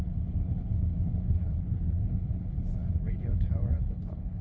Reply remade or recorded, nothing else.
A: remade